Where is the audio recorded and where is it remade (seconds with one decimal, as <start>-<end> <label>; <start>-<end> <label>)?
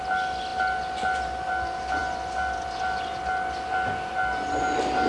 0.0-5.1 recorded